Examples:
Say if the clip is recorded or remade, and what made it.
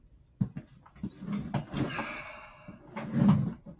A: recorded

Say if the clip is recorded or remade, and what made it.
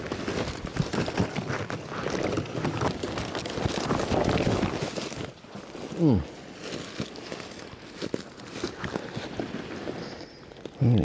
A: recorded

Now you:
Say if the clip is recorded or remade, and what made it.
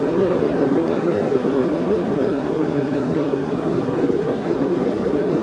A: remade, codec, SNAC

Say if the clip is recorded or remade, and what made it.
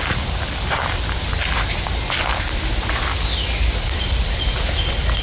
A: recorded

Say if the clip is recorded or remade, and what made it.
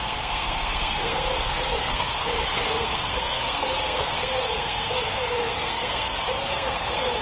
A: remade, codec, SNAC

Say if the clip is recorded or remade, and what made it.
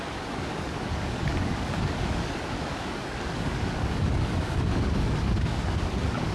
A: remade, codec, DAC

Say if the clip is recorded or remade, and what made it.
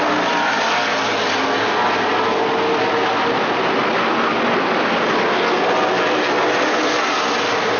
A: recorded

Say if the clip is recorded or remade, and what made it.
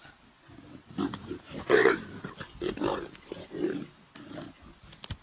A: recorded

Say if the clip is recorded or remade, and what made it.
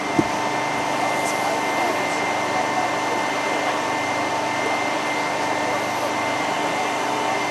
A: recorded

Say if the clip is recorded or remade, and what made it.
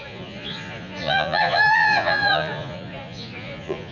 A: remade, vocoder, Vocos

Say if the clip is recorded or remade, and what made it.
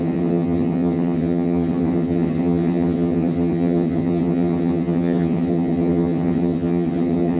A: remade, vocoder, HiFi-GAN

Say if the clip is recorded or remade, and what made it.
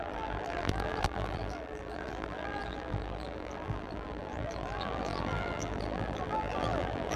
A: remade, vocoder, BigVGAN v2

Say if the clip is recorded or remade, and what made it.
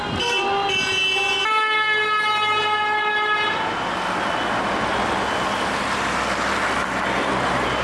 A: recorded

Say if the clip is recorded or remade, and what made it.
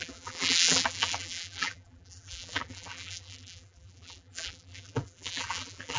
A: remade, vocoder, BigVGAN v2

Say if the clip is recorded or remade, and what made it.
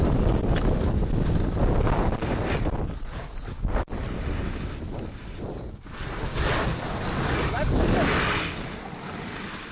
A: recorded